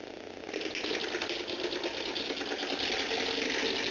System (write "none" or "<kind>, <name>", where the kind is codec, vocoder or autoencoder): none